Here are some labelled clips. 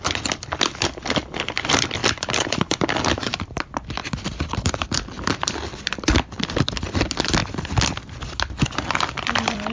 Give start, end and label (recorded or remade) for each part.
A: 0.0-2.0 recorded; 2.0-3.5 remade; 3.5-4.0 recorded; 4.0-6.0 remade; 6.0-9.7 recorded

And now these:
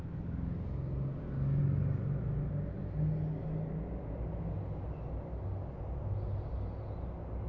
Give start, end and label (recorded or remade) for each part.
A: 0.0-7.5 recorded

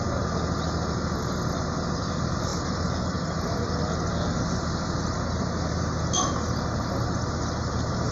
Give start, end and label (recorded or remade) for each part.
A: 0.0-8.1 recorded